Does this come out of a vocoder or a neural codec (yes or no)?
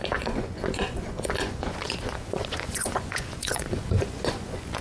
yes